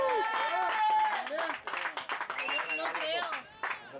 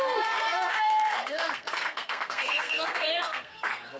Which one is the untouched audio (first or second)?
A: first